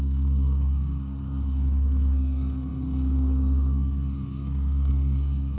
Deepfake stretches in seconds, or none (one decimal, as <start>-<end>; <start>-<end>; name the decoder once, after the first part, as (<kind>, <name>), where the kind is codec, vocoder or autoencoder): 0.0-5.6 (codec, SNAC)